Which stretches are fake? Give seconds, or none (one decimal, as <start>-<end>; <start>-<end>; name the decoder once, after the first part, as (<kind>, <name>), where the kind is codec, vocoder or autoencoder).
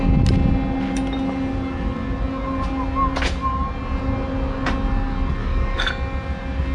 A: 5.4-5.9 (codec, DAC)